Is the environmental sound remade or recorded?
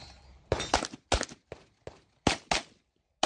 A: recorded